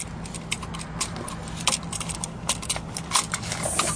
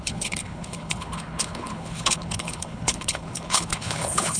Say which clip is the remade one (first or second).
second